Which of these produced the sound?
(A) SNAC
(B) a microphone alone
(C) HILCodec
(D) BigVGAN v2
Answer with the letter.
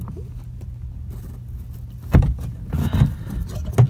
B